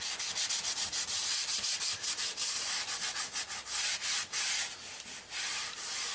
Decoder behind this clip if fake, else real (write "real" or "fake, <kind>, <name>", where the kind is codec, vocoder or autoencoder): real